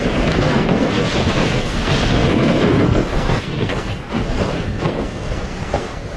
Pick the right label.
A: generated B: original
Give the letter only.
A